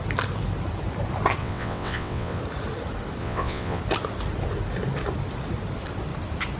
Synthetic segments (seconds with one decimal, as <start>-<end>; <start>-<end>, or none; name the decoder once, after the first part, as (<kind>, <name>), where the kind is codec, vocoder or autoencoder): 1.4-2.4 (vocoder, WaveNeXt); 3.2-3.8